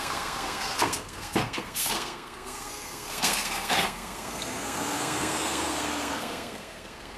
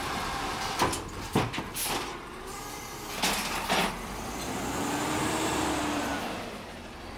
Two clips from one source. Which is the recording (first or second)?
second